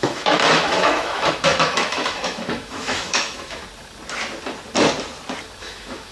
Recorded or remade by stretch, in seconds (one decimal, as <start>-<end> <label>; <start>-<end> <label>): 0.0-3.6 remade; 3.6-5.6 recorded; 5.6-6.1 remade